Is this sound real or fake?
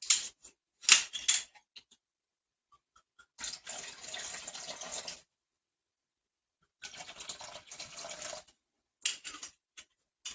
real